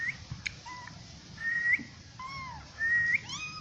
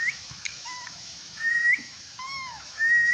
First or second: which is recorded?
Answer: first